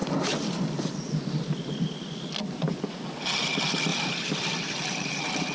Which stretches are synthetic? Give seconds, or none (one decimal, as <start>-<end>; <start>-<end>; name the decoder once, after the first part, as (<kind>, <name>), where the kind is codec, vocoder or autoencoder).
0.0-0.8 (vocoder, BigVGAN v2); 3.9-5.1